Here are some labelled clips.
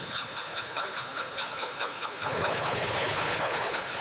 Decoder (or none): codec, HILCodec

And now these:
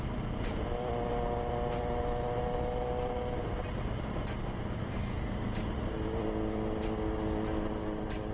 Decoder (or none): none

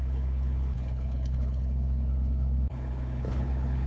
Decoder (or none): codec, HILCodec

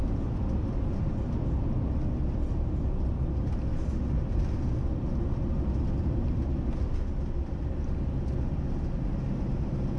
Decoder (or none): none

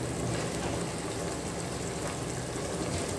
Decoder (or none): none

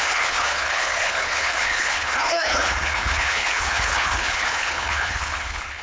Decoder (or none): codec, HILCodec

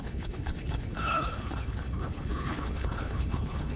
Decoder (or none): codec, HILCodec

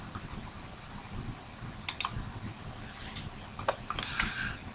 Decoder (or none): none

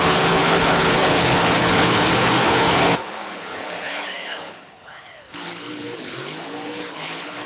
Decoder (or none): codec, HILCodec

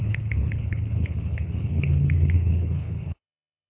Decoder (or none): codec, HILCodec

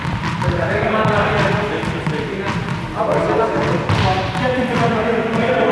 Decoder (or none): none